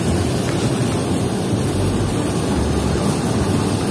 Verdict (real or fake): real